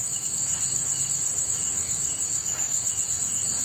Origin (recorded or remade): remade